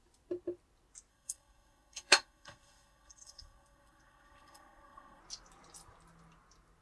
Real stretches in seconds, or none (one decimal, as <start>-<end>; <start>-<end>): 0.0-1.1; 5.2-6.8